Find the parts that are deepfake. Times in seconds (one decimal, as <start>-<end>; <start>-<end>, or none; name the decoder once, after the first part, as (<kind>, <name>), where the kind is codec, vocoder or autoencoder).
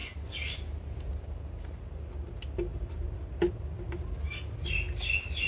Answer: none